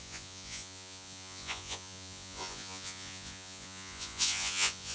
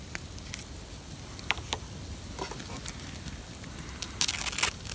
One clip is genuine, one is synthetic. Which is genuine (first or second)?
second